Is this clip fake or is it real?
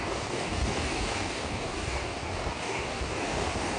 fake